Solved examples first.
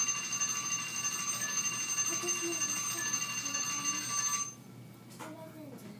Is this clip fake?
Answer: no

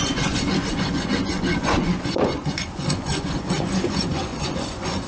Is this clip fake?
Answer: yes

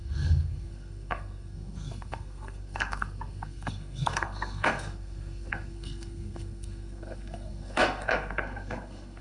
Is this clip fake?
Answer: yes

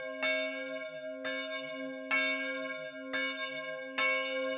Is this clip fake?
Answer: no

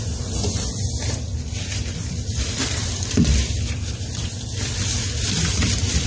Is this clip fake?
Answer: yes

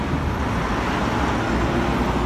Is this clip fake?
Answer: no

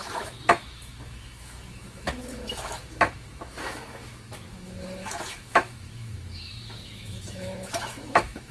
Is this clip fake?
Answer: yes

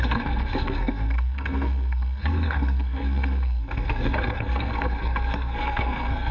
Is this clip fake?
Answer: yes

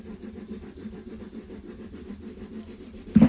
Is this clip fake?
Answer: no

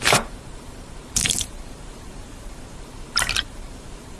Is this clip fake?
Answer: yes